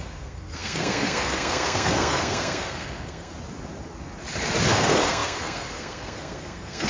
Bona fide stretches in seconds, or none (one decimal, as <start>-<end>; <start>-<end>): 3.3-4.7